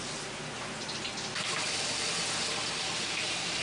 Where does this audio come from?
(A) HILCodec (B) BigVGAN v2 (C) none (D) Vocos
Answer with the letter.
C